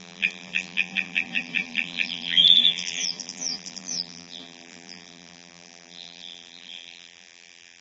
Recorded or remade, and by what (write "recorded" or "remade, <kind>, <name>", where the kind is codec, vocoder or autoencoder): remade, vocoder, BigVGAN v2